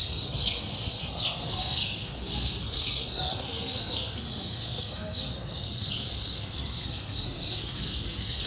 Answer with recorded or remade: remade